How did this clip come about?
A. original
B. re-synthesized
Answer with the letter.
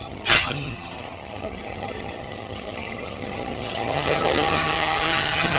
B